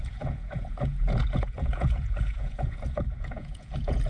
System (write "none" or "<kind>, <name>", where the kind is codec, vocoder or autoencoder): vocoder, Vocos